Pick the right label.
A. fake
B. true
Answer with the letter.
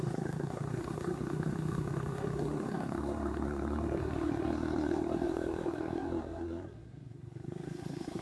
A